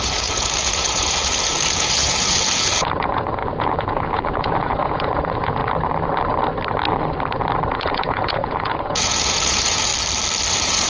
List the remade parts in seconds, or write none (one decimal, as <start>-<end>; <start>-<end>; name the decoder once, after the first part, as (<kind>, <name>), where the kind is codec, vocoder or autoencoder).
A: 0.0-5.6 (vocoder, Vocos); 7.7-9.9; 10.5-10.9